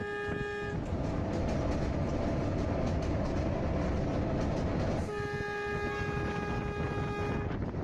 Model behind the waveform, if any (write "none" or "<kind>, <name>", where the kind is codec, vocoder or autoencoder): none